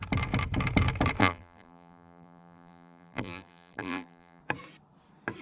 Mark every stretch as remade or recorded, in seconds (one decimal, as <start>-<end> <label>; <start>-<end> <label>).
0.0-1.2 recorded; 1.2-4.4 remade; 4.4-5.4 recorded